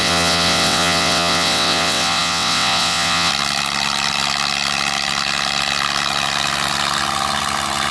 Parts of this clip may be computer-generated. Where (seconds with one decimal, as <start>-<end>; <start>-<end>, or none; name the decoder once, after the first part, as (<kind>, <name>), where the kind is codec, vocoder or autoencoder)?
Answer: 0.0-3.3 (vocoder, WaveNeXt)